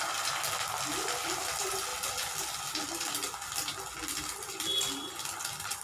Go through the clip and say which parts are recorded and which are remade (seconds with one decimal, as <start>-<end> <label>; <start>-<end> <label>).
0.0-5.8 recorded